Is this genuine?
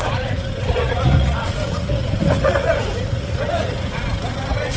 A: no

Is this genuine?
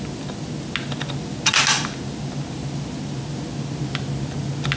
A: yes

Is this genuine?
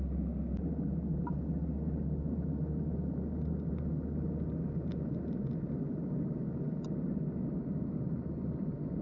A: yes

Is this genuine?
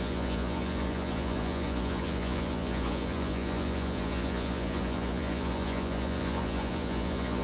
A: no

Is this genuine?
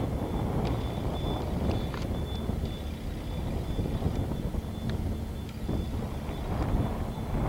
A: yes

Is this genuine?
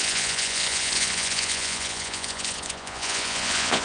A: no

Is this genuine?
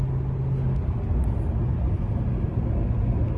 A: yes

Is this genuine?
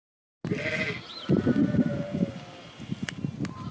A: yes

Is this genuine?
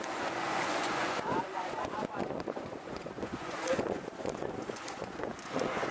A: no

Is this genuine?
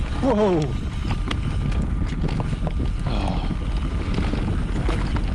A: yes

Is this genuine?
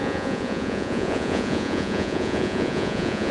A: no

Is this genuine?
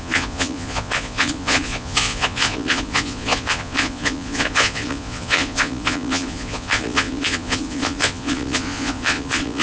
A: no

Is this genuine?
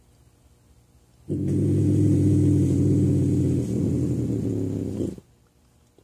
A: yes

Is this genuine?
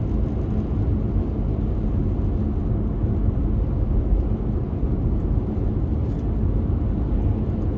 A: yes